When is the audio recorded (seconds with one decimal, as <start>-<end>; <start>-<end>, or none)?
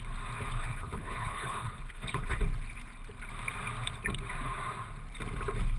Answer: 0.0-0.6; 2.4-5.8